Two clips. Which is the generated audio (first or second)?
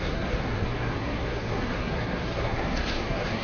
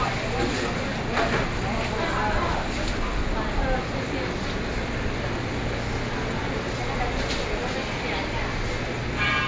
first